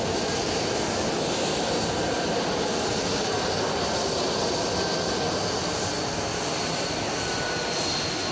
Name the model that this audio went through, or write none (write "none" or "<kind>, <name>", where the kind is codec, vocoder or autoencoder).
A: none